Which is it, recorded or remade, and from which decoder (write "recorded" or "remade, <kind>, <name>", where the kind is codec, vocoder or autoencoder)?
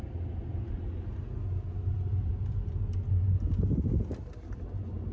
recorded